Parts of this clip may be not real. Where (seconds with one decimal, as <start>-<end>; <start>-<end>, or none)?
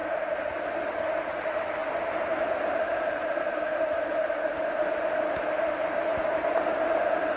1.8-5.0